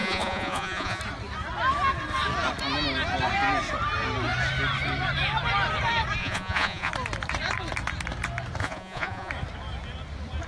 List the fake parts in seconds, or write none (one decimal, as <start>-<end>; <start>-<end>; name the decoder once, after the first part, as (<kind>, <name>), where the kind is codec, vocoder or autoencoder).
0.0-1.0 (vocoder, Vocos); 6.2-6.9; 8.6-9.3